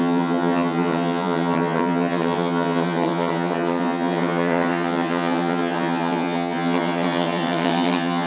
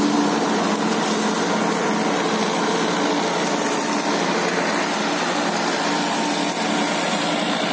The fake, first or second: first